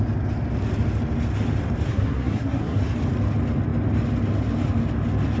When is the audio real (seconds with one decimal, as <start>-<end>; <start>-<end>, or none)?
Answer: 0.0-1.9; 2.8-5.4